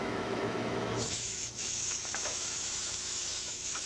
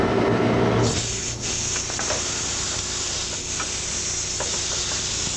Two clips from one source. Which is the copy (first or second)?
first